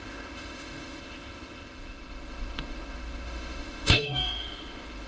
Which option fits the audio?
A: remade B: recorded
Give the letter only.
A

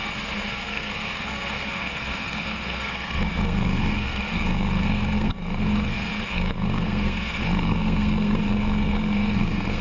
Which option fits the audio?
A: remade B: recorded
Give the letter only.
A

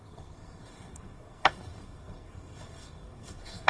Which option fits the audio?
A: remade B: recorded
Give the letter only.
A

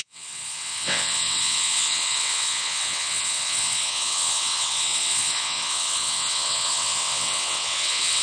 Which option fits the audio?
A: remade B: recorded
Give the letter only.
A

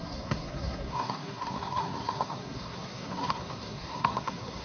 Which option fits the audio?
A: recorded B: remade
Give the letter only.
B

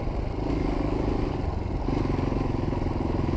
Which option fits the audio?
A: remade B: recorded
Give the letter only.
B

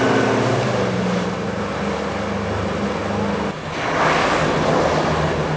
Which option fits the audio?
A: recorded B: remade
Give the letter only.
A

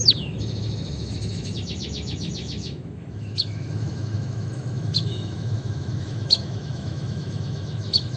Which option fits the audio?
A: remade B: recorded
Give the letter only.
A